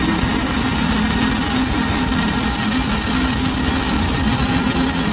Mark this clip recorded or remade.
recorded